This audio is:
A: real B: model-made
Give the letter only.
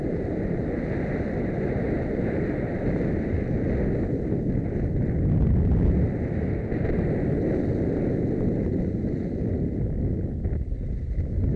A